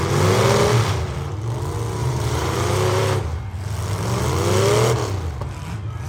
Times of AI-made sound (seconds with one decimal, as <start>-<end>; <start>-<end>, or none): 2.0-3.4